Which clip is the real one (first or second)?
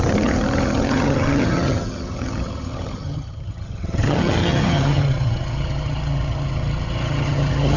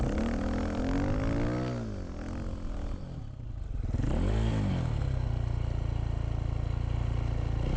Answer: second